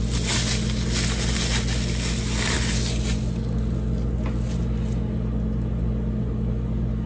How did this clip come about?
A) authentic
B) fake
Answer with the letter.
A